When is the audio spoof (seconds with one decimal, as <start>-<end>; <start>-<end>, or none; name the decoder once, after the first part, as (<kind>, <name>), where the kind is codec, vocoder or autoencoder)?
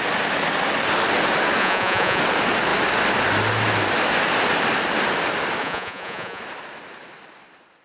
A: 1.6-2.2 (vocoder, Vocos); 5.6-6.4